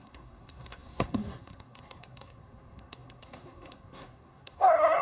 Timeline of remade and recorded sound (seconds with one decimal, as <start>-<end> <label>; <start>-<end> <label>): 0.0-5.0 remade